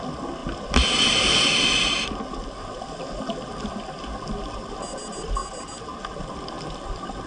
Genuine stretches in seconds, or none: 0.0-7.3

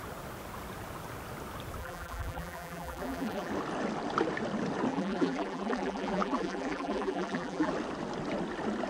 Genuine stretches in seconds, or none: 0.0-1.8; 3.5-4.9; 7.7-8.9

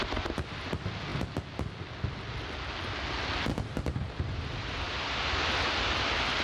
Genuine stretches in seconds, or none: 0.0-6.4

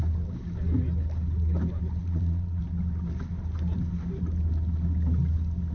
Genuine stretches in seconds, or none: 0.0-2.0; 2.6-5.7

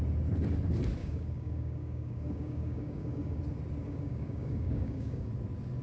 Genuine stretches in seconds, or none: 0.0-1.0; 3.4-3.8; 5.3-5.8

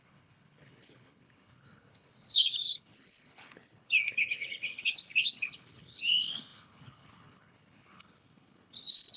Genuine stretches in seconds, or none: none

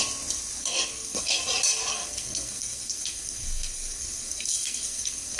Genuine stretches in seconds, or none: 0.0-0.6; 1.4-1.9

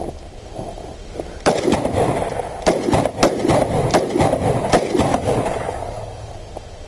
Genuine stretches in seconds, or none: 0.0-5.1; 6.3-6.9